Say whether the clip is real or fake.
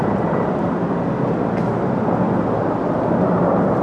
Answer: real